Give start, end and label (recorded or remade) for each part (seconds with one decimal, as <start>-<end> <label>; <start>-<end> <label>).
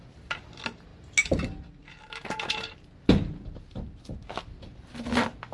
0.0-5.5 recorded